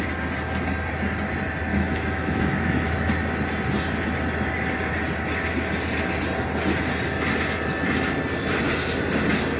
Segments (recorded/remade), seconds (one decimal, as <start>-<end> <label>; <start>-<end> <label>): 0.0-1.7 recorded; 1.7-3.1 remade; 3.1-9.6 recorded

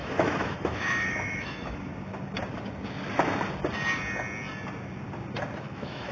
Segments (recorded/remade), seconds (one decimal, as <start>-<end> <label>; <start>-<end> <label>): 0.0-1.9 remade; 1.9-5.6 recorded; 5.6-6.1 remade

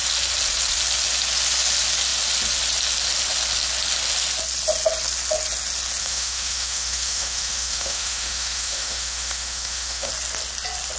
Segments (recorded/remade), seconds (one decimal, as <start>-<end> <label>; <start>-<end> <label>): 0.0-6.0 recorded; 6.0-10.1 remade; 10.1-11.0 recorded

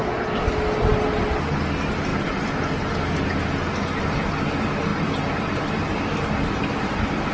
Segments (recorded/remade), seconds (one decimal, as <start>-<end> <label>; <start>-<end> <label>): 0.0-7.3 recorded

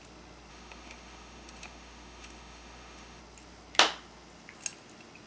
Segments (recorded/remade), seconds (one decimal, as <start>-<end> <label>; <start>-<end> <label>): 0.0-0.5 recorded; 0.5-3.2 remade; 3.2-5.3 recorded

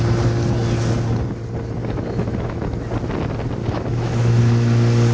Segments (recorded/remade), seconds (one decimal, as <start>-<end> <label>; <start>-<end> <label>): 0.0-1.8 recorded; 1.8-2.6 remade; 2.6-3.6 recorded; 3.6-4.4 remade; 4.4-5.1 recorded

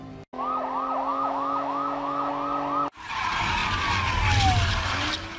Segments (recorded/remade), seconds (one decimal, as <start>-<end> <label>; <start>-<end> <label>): 0.0-1.1 recorded; 1.1-2.3 remade; 2.3-5.4 recorded

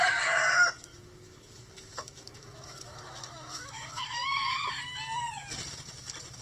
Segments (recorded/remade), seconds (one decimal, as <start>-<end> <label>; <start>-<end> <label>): 0.0-0.9 recorded; 0.9-4.7 remade; 4.7-6.4 recorded